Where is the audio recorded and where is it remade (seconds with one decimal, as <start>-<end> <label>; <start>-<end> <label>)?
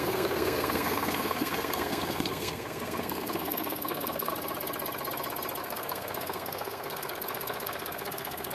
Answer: 0.0-4.3 remade; 4.3-5.6 recorded; 5.6-8.5 remade